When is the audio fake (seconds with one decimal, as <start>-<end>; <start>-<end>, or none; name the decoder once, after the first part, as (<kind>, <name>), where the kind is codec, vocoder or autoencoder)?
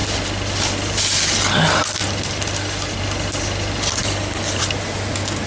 4.0-4.6 (codec, HILCodec)